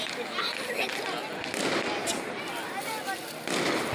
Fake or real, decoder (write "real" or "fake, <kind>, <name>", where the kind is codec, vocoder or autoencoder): real